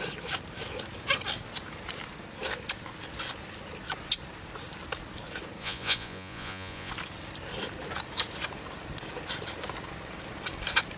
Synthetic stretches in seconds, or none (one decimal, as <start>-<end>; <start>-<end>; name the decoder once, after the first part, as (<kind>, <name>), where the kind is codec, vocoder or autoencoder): 5.6-6.9 (vocoder, Vocos)